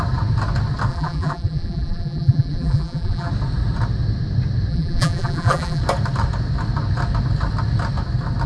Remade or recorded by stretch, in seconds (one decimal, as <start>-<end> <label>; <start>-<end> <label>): 0.0-0.9 recorded; 0.9-3.3 remade; 3.3-4.7 recorded; 4.7-5.8 remade; 5.8-8.5 recorded